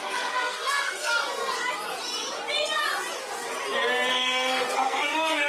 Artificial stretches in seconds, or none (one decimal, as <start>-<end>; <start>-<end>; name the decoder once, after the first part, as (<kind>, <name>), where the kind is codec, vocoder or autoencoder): 0.0-1.1 (codec, SNAC); 4.1-5.5